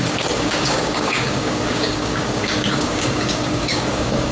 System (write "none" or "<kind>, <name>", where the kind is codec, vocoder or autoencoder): codec, DAC